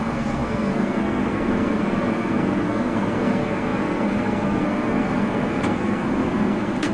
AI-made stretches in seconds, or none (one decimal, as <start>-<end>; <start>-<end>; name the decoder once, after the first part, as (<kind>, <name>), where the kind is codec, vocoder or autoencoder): 0.0-6.9 (codec, SNAC)